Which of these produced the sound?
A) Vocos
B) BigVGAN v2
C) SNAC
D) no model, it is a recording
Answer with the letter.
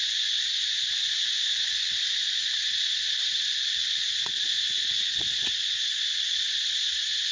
A